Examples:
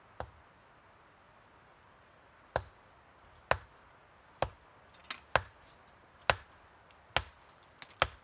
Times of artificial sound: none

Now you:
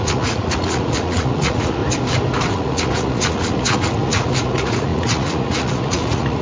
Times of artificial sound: 0.0-1.8 (vocoder, Vocos); 2.5-6.4

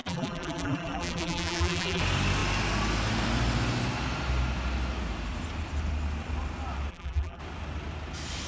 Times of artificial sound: 0.0-2.0 (vocoder, BigVGAN v2); 6.9-7.4

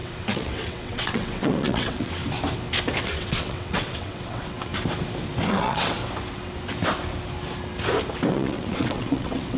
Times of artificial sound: 0.0-2.2 (vocoder, WaveNeXt); 3.0-4.7; 5.5-6.0; 8.3-9.6

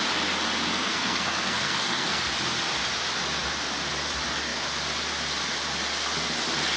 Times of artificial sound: 0.7-2.2 (codec, SNAC)

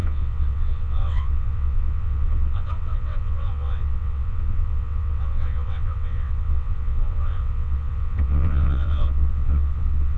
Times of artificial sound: 0.0-10.2 (vocoder, WaveNeXt)